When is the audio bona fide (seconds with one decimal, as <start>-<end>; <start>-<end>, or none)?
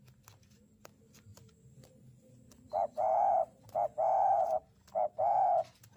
0.0-1.3; 3.7-4.2